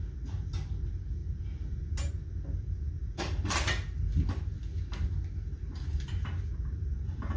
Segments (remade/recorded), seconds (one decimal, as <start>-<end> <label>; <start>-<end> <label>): 0.0-6.2 recorded; 6.2-7.4 remade